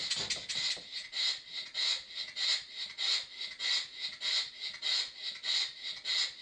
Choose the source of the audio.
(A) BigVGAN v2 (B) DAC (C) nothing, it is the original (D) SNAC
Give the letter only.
C